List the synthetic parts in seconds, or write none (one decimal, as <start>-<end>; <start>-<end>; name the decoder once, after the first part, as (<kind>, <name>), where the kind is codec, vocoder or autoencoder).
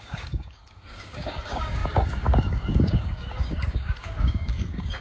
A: 0.0-5.0 (codec, DAC)